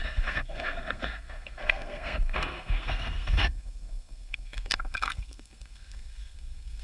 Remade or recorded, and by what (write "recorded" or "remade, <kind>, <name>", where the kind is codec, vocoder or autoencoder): remade, codec, SNAC